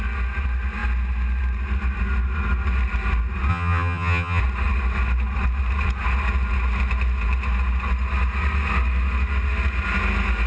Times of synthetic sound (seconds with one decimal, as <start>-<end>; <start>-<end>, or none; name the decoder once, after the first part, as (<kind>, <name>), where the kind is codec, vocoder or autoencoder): 3.5-4.4 (vocoder, HiFi-GAN)